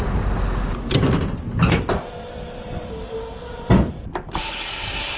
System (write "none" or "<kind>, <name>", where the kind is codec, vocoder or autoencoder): none